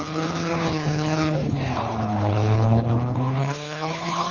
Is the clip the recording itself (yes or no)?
no